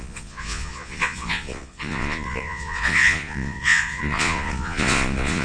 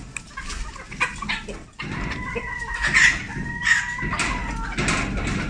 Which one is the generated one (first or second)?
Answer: first